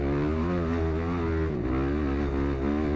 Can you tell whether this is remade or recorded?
recorded